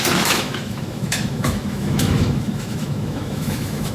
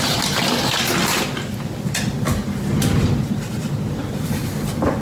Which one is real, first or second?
second